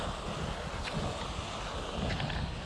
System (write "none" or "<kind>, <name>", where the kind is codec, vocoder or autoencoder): none